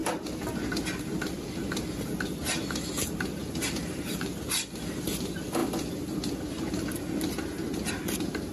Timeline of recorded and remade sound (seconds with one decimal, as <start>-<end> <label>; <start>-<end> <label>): 0.0-1.8 remade; 1.8-3.4 recorded; 3.4-4.3 remade; 4.3-8.5 recorded